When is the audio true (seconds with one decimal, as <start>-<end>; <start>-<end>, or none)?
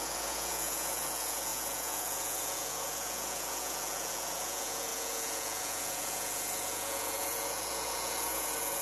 none